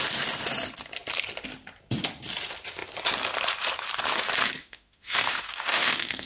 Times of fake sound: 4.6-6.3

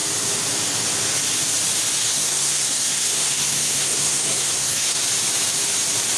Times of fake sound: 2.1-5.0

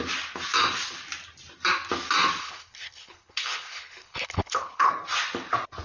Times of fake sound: 2.4-4.9

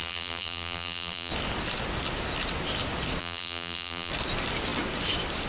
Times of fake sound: 0.0-1.3; 3.2-4.1

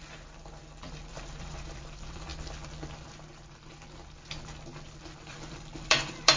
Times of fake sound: 0.0-2.3; 5.3-6.4